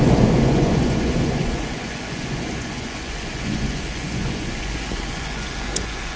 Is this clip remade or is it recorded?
remade